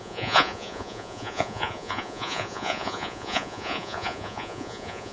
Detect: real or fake fake